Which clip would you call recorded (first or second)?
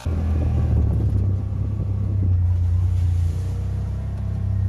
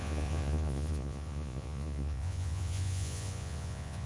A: first